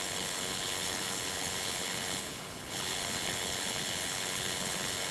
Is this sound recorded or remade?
remade